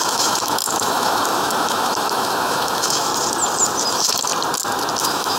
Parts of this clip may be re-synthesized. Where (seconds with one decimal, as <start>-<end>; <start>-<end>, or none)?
0.0-3.1; 3.9-4.3; 5.0-5.4